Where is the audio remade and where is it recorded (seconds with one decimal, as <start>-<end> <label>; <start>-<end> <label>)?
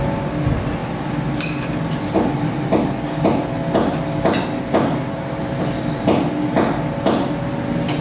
0.0-8.0 recorded